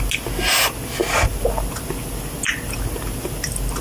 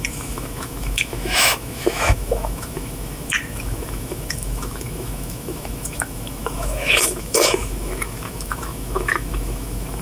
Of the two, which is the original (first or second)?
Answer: first